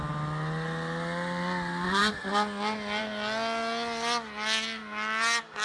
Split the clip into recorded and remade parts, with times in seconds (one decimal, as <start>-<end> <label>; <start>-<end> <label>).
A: 0.0-5.6 recorded